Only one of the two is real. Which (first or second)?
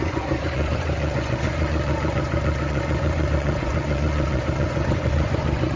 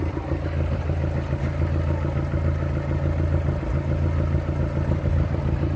second